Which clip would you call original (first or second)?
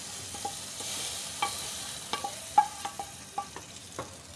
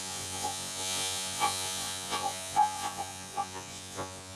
first